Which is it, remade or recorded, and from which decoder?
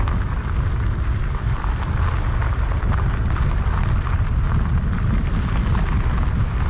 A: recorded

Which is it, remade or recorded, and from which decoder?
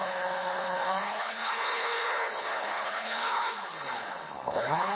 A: remade, codec, HILCodec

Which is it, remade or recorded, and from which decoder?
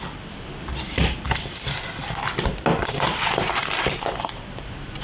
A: recorded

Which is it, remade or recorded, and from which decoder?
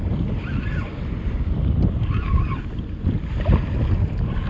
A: recorded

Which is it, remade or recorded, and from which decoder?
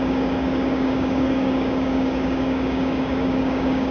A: remade, codec, DAC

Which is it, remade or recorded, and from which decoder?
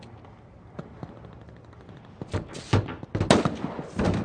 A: recorded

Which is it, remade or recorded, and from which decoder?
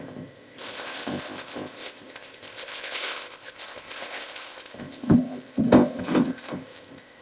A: remade, codec, ZipCodec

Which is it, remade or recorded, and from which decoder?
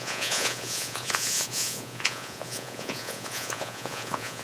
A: remade, vocoder, Vocos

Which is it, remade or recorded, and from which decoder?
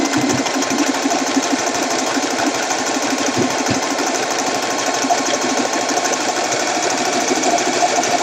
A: remade, vocoder, BigVGAN v2